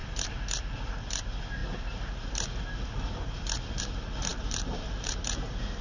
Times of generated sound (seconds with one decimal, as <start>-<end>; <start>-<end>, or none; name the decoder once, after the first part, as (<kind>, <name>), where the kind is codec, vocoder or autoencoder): 4.3-5.1 (vocoder, BigVGAN v2)